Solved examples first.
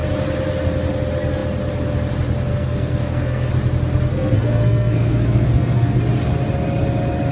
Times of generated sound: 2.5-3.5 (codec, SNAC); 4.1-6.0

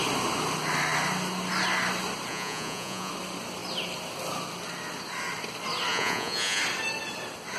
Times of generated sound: 2.3-3.1 (vocoder, Vocos); 5.9-6.6